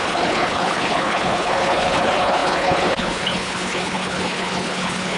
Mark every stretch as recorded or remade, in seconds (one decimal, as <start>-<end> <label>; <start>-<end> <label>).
0.0-5.2 remade